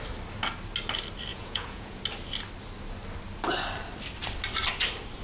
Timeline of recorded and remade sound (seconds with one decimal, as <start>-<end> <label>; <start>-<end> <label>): 0.0-1.3 recorded; 1.3-2.0 remade; 2.0-5.2 recorded